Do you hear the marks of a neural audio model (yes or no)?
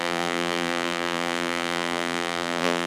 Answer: yes